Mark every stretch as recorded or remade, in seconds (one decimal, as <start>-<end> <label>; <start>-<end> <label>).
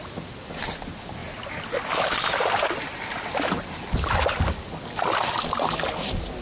0.0-6.4 recorded